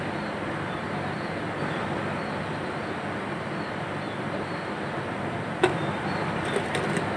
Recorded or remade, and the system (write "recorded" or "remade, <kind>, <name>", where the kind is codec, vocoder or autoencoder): recorded